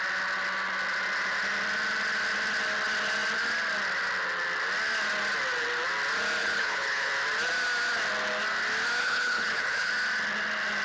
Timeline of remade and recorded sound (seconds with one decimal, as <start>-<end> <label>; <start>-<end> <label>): 0.0-6.4 recorded; 6.4-7.1 remade; 7.1-9.0 recorded; 9.0-9.9 remade; 9.9-10.8 recorded